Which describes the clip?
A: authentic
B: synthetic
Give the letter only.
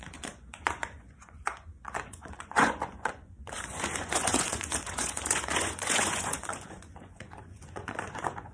B